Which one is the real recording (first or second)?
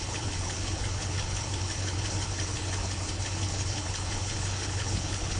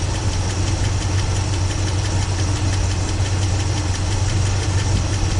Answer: second